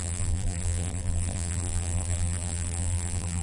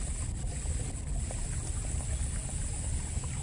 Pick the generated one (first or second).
first